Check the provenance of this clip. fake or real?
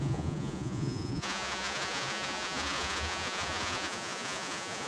fake